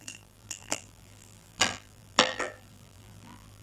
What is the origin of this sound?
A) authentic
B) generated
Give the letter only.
B